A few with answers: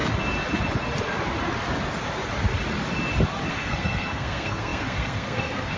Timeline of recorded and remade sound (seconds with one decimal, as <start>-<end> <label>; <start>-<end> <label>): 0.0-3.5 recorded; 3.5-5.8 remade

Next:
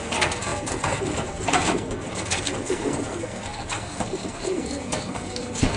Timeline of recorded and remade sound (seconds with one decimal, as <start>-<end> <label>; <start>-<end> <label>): 0.0-5.8 remade

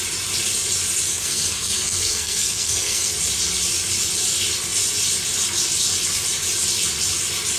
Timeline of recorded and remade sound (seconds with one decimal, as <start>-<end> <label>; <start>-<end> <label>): 0.0-1.1 recorded; 1.1-3.1 remade; 3.1-7.6 recorded

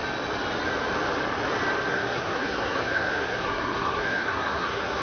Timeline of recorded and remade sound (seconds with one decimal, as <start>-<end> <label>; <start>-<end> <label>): 0.0-1.9 recorded; 1.9-5.0 remade

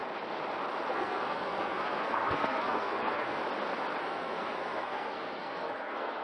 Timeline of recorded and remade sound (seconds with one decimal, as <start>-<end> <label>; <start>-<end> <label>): 0.0-0.9 recorded; 0.9-3.4 remade; 3.4-4.0 recorded; 4.0-6.2 remade